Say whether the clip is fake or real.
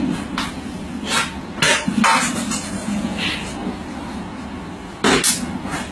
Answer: real